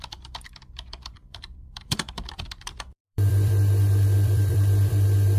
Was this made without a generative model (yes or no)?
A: no